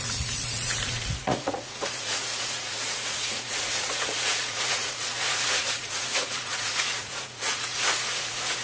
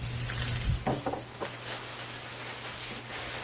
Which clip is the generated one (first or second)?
first